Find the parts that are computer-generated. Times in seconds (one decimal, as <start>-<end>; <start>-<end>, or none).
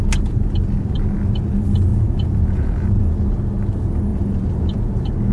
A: 1.9-3.0; 4.1-4.8